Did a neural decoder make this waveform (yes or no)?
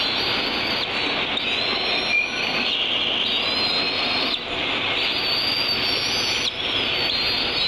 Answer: no